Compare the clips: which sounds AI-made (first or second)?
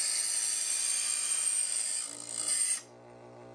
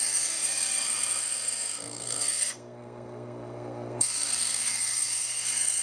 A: second